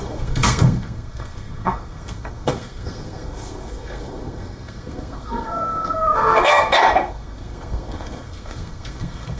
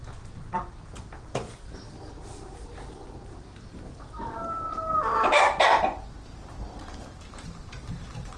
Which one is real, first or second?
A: second